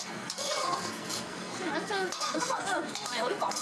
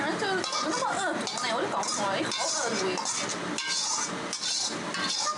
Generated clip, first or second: first